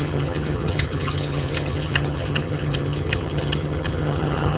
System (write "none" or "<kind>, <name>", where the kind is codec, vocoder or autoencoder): vocoder, HiFi-GAN